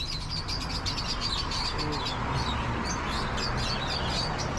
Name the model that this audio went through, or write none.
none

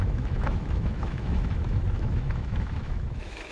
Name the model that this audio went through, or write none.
autoencoder, DAC-VAE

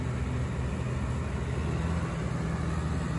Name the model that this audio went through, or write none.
none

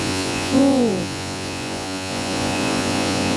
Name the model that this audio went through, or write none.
vocoder, Vocos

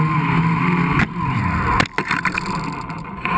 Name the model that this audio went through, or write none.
none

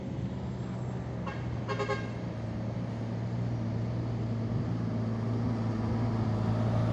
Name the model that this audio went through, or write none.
none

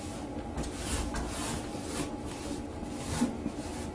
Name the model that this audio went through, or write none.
none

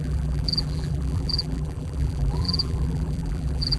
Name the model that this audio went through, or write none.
vocoder, BigVGAN v2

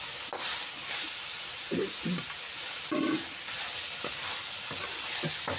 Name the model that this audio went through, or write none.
none